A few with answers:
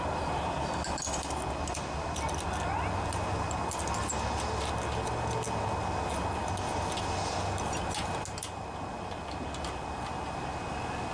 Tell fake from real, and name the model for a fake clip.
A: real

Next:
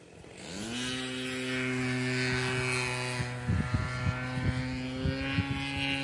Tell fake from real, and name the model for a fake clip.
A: real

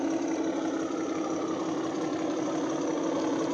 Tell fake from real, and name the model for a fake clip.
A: real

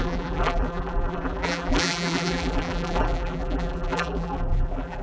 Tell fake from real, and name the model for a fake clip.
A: fake, vocoder, BigVGAN v2